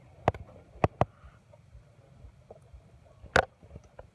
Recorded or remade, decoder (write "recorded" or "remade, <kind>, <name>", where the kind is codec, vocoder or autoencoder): recorded